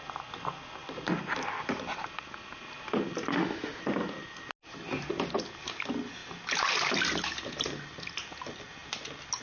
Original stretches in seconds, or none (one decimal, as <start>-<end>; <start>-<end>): 0.0-3.3; 3.8-9.4